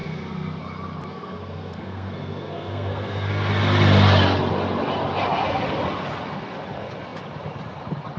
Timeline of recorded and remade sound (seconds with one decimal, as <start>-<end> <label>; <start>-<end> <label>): 0.0-0.6 remade; 0.6-1.1 recorded; 1.1-3.5 remade; 3.5-8.2 recorded